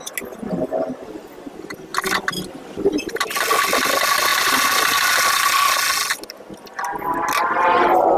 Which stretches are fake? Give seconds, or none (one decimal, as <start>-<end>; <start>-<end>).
1.9-3.2